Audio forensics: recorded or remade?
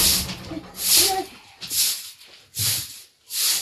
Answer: recorded